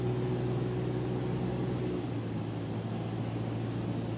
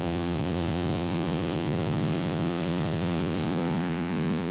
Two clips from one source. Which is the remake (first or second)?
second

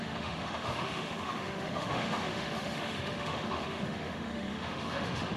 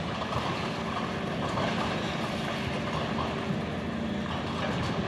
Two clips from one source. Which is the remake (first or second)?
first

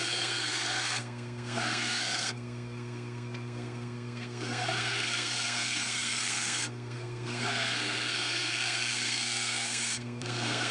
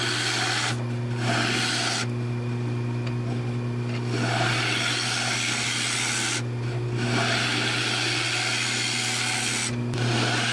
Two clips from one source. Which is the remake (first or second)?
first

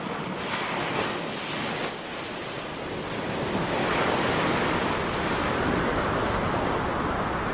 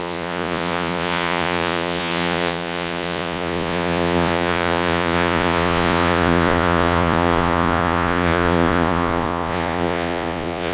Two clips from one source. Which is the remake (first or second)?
second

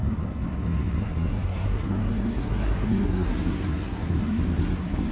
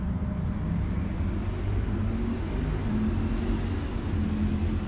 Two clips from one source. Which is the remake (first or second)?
first